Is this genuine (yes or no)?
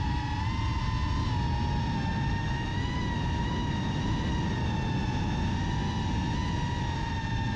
yes